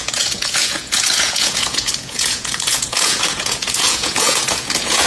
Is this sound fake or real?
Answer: fake